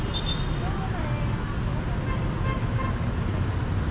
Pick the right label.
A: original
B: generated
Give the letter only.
A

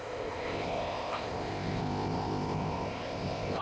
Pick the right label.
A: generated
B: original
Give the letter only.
A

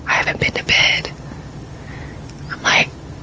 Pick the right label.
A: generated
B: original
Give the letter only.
B